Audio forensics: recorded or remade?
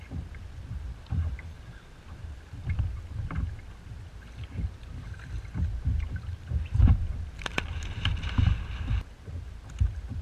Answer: recorded